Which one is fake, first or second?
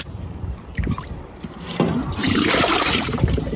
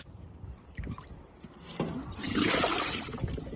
first